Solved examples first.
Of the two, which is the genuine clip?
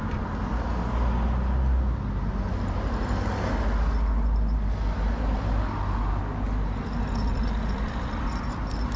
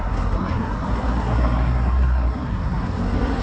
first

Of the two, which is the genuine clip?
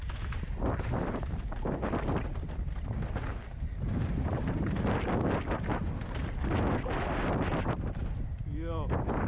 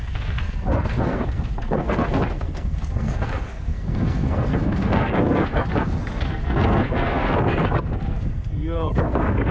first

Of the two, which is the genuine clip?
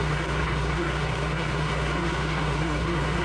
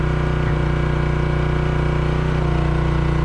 second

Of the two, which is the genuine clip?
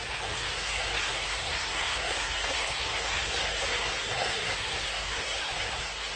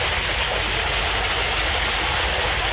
second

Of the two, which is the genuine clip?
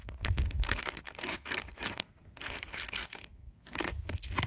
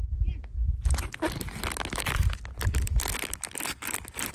second